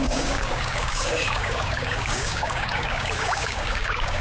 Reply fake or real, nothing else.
fake